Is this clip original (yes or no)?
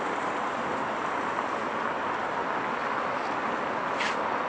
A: yes